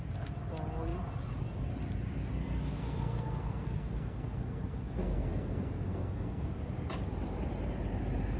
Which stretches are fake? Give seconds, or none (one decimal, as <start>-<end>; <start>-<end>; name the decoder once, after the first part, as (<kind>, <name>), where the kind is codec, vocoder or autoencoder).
2.7-6.5 (codec, SNAC)